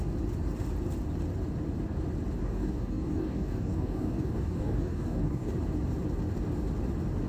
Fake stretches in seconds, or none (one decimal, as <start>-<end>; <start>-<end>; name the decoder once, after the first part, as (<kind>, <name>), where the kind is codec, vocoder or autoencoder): 2.4-5.5 (codec, DAC)

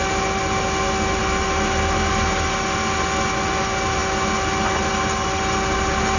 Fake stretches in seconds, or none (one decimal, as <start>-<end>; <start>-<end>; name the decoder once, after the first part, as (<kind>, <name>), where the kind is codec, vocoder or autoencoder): none

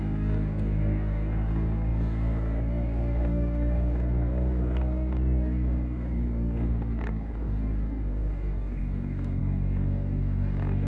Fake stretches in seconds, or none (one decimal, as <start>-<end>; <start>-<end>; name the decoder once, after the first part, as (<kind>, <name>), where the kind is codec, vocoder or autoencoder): 0.0-10.9 (codec, DAC)

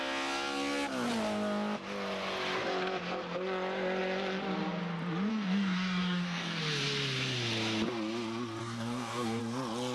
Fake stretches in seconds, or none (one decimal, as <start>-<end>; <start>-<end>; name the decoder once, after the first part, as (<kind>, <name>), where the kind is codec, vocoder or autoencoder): 5.3-6.6 (codec, DAC); 8.6-9.4